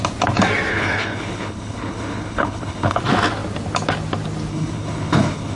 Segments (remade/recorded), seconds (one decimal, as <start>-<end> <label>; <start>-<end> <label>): 0.0-0.7 recorded; 0.7-3.0 remade; 3.0-4.5 recorded; 4.5-5.6 remade